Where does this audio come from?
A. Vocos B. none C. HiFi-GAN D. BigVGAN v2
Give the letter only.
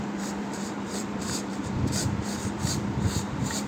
D